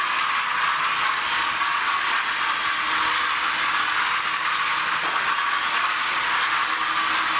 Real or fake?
real